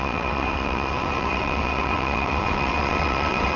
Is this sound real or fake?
fake